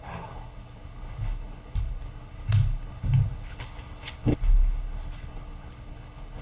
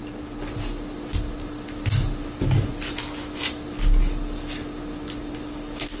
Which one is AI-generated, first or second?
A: first